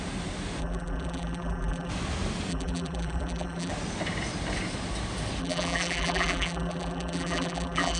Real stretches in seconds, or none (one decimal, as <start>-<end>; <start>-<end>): 0.0-0.6; 1.9-2.5; 3.7-5.4